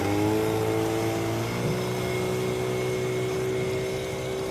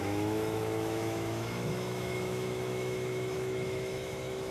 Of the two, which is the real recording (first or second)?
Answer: first